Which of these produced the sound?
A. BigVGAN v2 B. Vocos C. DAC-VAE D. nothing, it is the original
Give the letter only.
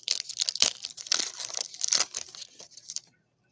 A